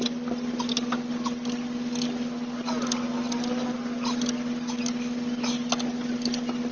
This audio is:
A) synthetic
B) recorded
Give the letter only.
B